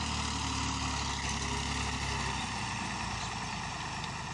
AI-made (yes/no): no